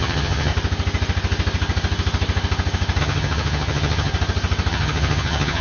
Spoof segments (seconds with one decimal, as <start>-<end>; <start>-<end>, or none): 0.0-0.5; 3.0-4.1; 4.7-5.6